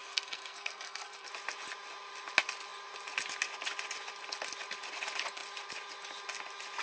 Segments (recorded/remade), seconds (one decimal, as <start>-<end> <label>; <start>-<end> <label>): 0.0-1.3 remade; 1.3-6.8 recorded